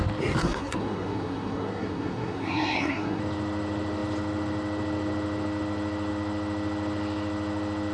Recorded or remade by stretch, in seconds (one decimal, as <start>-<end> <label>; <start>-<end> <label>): 0.0-0.4 recorded; 0.4-3.2 remade; 3.2-7.9 recorded